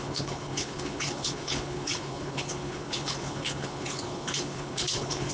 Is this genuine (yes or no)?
no